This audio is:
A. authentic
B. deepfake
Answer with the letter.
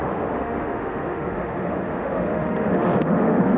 B